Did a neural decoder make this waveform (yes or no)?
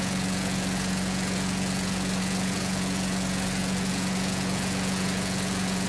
yes